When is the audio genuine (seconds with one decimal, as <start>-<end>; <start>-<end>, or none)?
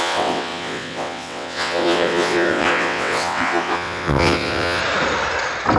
4.8-5.8